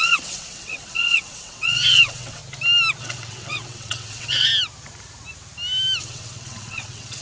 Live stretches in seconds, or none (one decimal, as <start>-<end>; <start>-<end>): 2.4-3.0; 4.5-6.0